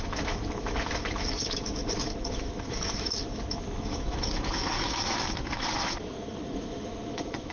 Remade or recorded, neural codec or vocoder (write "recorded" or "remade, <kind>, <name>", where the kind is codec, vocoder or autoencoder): remade, autoencoder, DAC-VAE